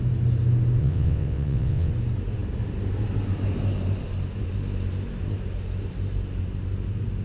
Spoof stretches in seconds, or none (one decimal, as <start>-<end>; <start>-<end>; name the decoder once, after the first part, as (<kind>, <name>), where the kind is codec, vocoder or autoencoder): 0.8-1.9 (vocoder, WaveNeXt)